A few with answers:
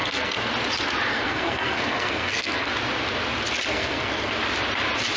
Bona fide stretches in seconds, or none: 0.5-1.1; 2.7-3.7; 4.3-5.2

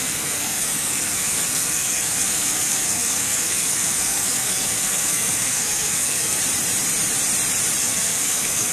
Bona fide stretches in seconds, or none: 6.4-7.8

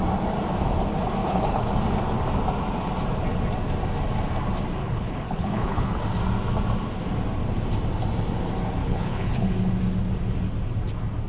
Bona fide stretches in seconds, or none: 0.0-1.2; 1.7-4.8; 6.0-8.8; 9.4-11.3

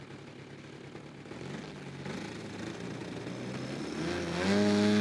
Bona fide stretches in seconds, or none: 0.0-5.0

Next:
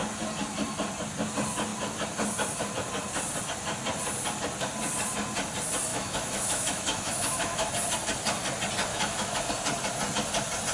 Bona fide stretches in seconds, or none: 0.0-5.9; 7.7-8.9; 9.5-10.7

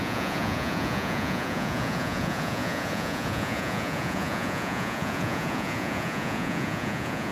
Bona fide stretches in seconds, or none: none

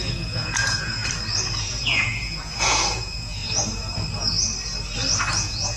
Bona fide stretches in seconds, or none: 1.0-1.6; 3.4-5.3